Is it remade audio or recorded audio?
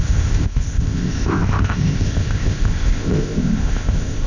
remade